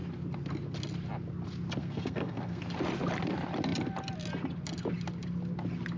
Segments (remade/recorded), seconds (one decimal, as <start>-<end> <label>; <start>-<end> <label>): 0.0-1.8 recorded; 1.8-2.6 remade; 2.6-6.0 recorded